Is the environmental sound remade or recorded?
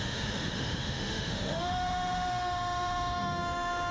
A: remade